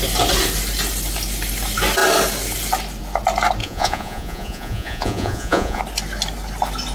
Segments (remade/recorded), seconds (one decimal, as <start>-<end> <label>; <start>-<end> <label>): 0.0-3.6 recorded; 3.6-5.8 remade; 5.8-6.9 recorded